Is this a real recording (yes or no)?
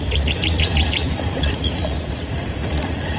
no